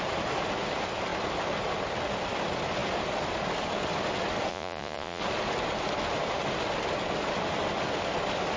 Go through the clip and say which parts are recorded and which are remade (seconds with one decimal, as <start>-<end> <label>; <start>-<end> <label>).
0.0-4.5 recorded; 4.5-5.2 remade; 5.2-8.6 recorded